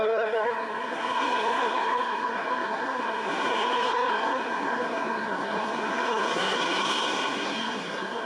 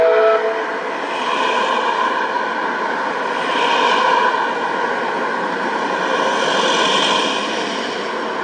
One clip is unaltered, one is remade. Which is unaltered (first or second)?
second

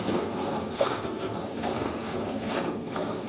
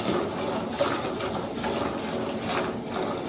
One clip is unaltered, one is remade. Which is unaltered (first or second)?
second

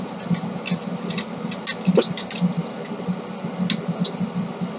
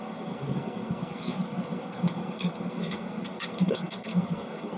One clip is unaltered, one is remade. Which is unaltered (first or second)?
first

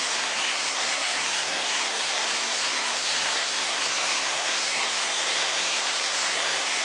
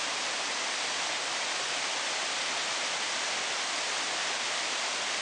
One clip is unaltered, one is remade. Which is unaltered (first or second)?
second